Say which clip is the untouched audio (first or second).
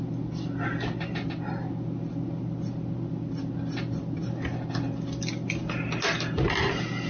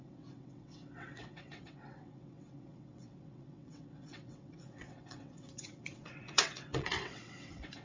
first